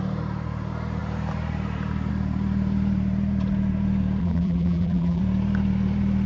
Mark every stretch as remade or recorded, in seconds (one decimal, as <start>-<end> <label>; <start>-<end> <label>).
0.0-4.2 recorded; 4.2-5.2 remade; 5.2-6.3 recorded